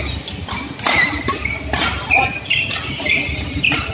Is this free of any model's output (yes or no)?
yes